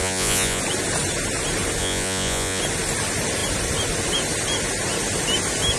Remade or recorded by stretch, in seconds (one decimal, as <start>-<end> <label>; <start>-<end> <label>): 0.0-0.6 remade; 0.6-1.8 recorded; 1.8-2.6 remade; 2.6-5.8 recorded